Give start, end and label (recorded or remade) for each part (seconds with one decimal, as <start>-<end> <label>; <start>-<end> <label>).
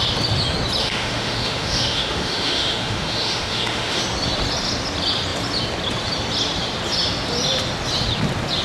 0.0-0.8 recorded; 0.8-4.0 remade; 4.0-8.6 recorded